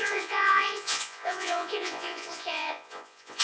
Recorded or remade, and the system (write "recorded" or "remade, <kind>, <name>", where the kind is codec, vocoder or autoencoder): remade, vocoder, Vocos